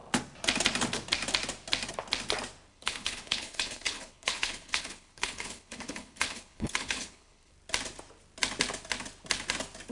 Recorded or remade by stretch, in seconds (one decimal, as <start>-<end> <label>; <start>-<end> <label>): 0.0-2.7 recorded; 2.7-7.5 remade; 7.5-9.9 recorded